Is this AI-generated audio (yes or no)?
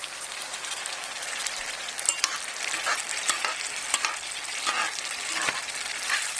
no